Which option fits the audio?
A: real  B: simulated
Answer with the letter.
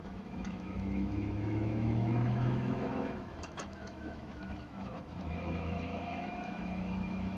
B